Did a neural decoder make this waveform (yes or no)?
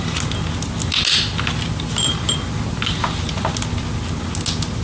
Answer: no